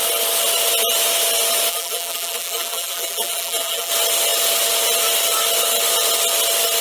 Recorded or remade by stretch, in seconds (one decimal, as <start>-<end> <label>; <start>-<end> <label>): 0.0-1.7 recorded; 1.7-3.9 remade; 3.9-6.8 recorded